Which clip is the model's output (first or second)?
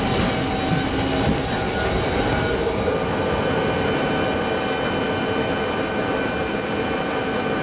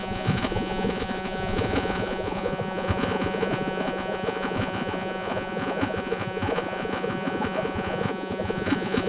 second